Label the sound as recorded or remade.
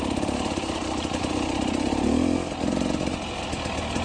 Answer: recorded